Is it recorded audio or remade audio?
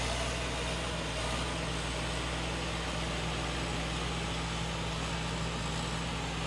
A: recorded